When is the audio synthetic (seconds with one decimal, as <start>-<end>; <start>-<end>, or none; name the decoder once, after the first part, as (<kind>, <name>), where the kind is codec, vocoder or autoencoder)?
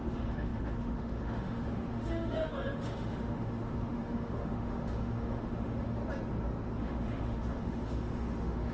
0.0-6.0 (autoencoder, DAC-VAE); 6.8-8.7